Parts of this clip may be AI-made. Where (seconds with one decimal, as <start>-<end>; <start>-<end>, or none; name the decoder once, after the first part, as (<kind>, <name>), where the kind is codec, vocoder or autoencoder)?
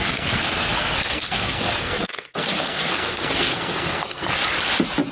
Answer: 0.0-4.4 (codec, SNAC)